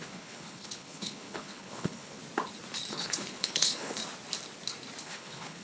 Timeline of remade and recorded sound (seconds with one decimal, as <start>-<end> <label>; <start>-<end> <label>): 0.0-2.2 remade; 2.2-2.9 recorded; 2.9-4.0 remade; 4.0-5.0 recorded; 5.0-5.6 remade